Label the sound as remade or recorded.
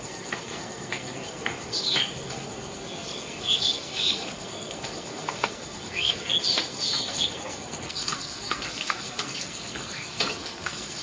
remade